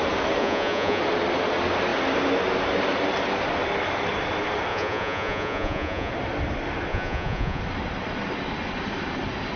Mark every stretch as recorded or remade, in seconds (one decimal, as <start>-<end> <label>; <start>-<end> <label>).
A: 0.0-0.4 recorded; 0.4-1.0 remade; 1.0-4.7 recorded; 4.7-6.1 remade; 6.1-6.9 recorded; 6.9-7.6 remade; 7.6-9.6 recorded